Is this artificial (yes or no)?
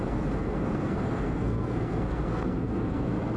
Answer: yes